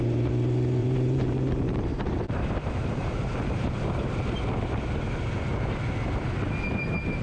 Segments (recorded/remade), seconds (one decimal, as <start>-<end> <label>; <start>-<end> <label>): 0.0-0.8 recorded; 0.8-3.8 remade; 3.8-7.2 recorded